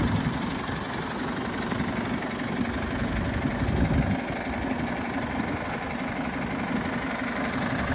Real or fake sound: real